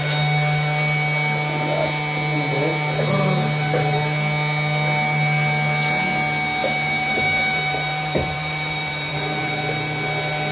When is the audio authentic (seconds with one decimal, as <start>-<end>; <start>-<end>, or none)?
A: 0.0-6.6; 9.5-10.5